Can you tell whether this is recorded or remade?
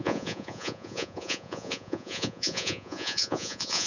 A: remade